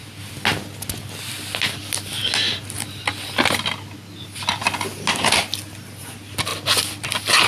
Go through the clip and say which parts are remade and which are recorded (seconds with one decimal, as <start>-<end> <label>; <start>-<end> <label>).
0.0-7.5 recorded